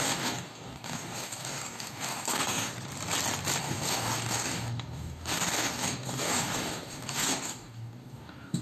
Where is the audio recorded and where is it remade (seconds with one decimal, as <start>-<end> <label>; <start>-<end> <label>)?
0.0-2.7 remade; 2.7-3.6 recorded; 3.6-8.6 remade